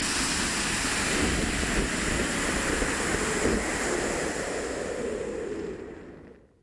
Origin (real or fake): real